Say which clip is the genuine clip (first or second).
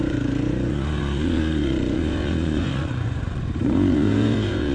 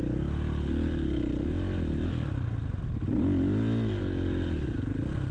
second